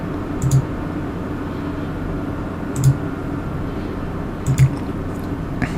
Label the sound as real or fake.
fake